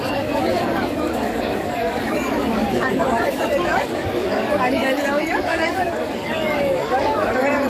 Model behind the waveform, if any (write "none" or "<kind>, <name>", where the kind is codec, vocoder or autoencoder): codec, DAC